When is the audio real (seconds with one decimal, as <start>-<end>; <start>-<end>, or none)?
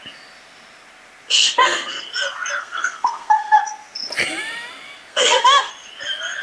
0.0-1.4; 2.1-2.6; 3.6-5.1; 5.7-6.4